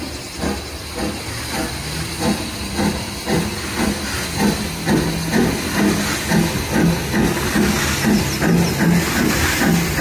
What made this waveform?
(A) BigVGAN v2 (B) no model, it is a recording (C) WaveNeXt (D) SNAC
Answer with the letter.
B